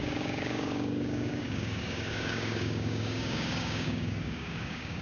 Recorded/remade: remade